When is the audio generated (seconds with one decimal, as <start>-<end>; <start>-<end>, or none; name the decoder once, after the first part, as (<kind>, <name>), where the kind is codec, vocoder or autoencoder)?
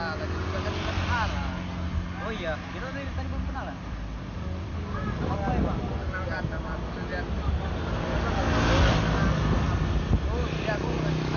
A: 3.1-4.7 (vocoder, BigVGAN v2)